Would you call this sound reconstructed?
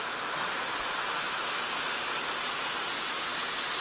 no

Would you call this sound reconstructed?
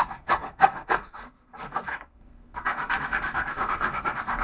yes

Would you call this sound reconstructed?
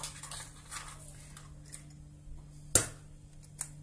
no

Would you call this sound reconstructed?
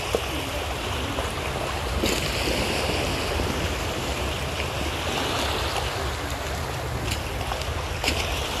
no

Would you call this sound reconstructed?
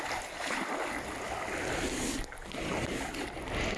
no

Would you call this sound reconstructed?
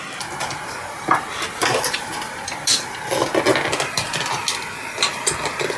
no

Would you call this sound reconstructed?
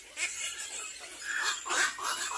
no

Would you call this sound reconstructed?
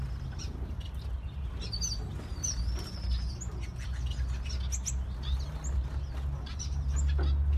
no